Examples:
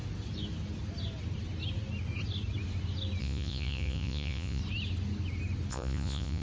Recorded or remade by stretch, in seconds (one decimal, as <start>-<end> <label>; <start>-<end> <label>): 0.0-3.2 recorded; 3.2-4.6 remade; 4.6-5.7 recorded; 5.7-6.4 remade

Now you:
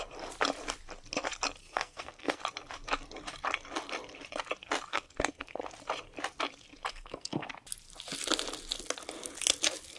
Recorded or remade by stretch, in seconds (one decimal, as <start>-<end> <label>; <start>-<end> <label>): 0.0-1.6 recorded; 1.6-2.4 remade; 2.4-4.9 recorded; 4.9-5.6 remade; 5.6-6.9 recorded; 6.9-7.5 remade; 7.5-10.0 recorded

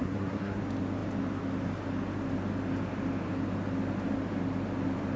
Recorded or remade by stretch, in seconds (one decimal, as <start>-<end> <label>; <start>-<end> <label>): 0.0-0.6 remade; 0.6-5.2 recorded